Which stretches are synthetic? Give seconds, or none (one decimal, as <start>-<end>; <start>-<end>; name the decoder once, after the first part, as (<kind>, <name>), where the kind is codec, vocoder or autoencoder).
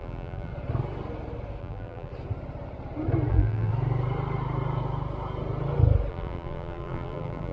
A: 0.0-0.5 (vocoder, BigVGAN v2); 1.6-2.1; 3.3-3.7; 6.1-7.5